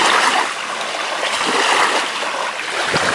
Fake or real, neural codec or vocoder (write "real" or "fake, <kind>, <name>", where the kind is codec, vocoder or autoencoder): real